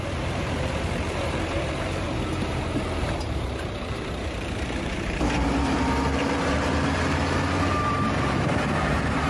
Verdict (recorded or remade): remade